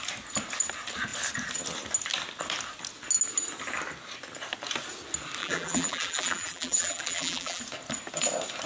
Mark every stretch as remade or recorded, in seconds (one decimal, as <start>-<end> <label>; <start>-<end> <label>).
0.0-5.4 recorded; 5.4-7.6 remade; 7.6-8.7 recorded